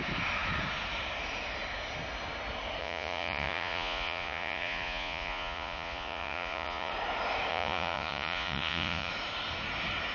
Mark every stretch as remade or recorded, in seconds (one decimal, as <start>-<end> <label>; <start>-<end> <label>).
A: 0.0-2.8 recorded; 2.8-6.9 remade; 6.9-7.5 recorded; 7.5-9.1 remade; 9.1-10.1 recorded